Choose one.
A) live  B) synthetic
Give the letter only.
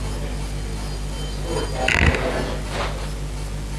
A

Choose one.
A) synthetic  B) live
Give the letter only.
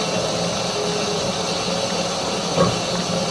B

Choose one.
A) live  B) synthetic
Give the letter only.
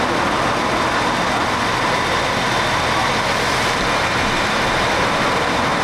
A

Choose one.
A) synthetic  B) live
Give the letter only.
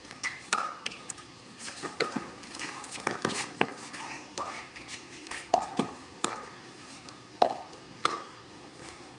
A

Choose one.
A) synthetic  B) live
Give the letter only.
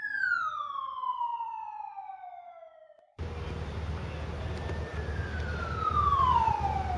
B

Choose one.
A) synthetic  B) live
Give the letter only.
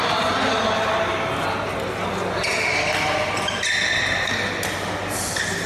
B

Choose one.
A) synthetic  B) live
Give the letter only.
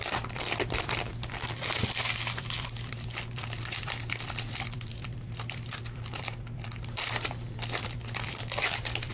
A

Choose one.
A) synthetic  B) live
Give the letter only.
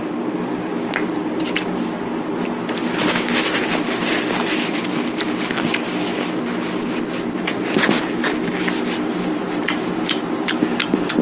B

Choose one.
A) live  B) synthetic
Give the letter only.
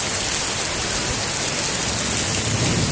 A